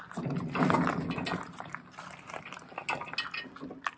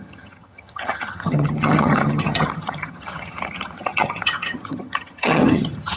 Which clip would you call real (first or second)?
first